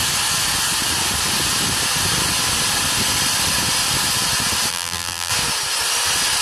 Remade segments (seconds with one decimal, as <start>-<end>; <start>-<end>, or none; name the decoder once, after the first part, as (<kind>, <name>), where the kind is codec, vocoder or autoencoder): 4.7-5.3 (vocoder, BigVGAN v2)